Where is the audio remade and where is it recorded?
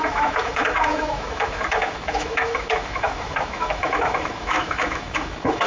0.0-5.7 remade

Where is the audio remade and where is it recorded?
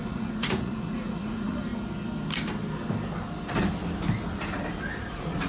0.0-1.7 remade; 1.7-5.0 recorded; 5.0-5.5 remade